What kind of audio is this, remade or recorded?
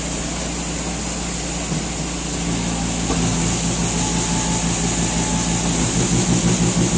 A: recorded